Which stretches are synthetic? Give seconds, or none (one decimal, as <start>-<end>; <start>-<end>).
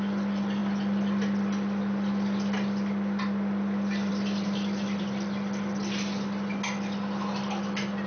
none